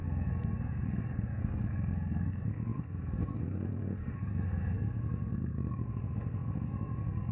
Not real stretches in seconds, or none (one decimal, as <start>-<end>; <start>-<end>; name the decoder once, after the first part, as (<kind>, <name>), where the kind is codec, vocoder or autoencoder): 0.0-7.3 (codec, SNAC)